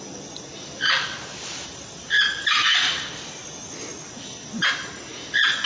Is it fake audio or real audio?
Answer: real